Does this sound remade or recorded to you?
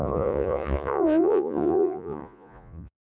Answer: remade